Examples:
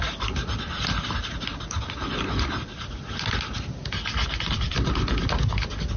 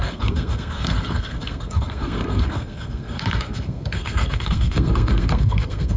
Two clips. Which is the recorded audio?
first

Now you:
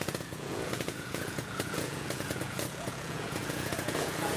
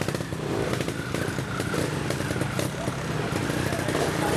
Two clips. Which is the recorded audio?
second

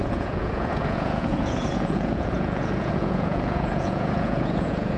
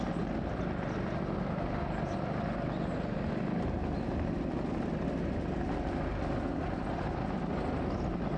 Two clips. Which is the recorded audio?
second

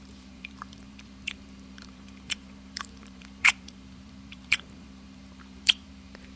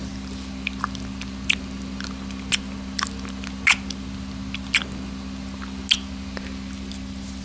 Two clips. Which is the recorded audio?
second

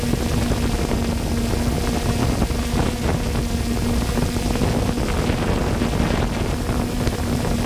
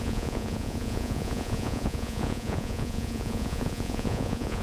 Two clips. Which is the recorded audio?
first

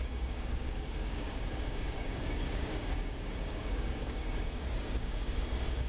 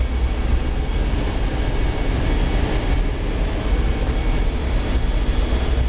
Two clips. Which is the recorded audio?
second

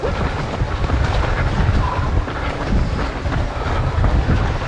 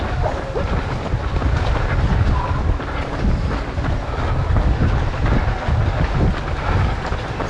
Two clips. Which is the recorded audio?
second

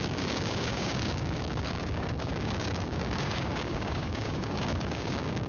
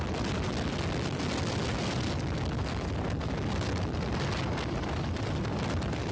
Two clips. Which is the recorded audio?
second